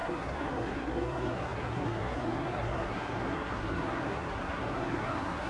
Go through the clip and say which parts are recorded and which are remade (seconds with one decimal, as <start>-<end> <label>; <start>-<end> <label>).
0.0-5.5 remade